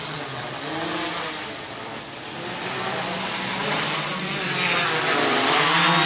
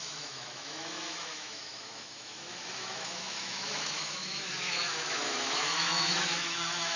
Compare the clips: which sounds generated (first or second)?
second